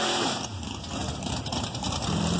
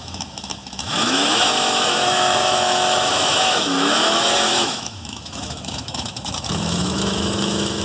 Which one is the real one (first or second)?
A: first